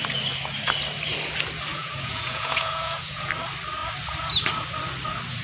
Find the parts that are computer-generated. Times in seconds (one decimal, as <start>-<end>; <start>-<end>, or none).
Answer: 1.7-3.3